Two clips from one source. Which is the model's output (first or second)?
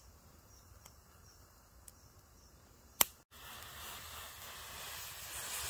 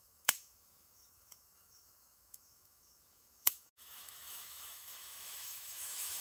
second